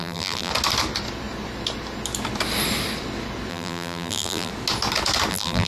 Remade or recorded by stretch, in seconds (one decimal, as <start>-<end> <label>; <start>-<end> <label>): 0.0-0.5 remade; 0.5-3.5 recorded; 3.5-4.5 remade; 4.5-5.3 recorded; 5.3-5.7 remade